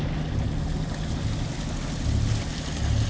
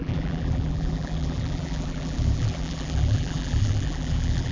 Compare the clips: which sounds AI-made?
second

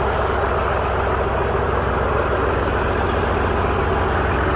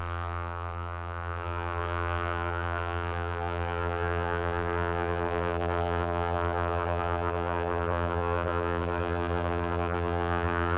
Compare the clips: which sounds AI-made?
second